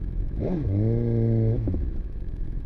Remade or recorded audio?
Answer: remade